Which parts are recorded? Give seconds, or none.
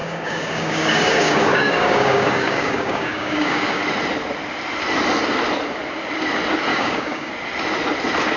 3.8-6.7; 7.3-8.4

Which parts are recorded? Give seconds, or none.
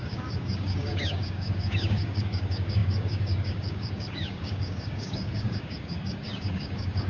none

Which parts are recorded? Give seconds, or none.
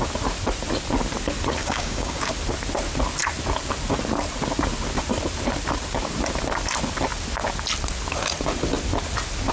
0.0-1.6; 2.3-9.5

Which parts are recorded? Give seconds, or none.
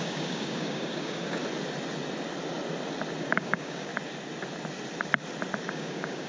1.4-3.2; 3.9-5.7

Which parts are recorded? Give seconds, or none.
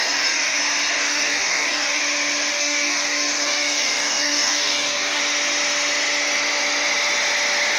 0.6-1.0; 2.0-2.5; 5.2-7.8